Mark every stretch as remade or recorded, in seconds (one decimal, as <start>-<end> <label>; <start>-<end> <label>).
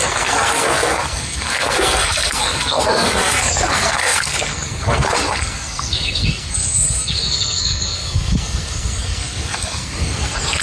0.0-10.6 remade